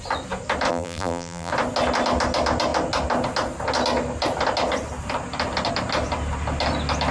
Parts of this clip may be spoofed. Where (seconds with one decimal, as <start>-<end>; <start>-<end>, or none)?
0.7-1.5